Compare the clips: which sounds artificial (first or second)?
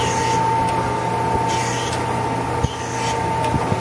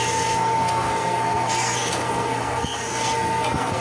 second